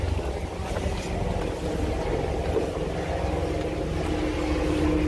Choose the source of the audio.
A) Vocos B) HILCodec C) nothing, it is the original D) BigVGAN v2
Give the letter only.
C